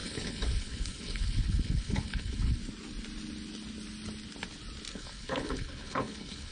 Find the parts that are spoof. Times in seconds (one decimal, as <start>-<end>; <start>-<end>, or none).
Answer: 0.0-2.6; 4.9-6.5